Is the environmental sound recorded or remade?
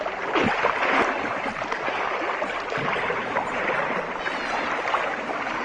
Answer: recorded